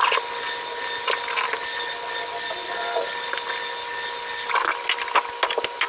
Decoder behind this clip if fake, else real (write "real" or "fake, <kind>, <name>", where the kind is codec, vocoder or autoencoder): real